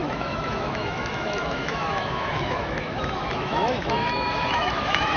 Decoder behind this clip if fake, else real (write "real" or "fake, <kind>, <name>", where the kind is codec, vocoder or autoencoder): fake, autoencoder, DAC-VAE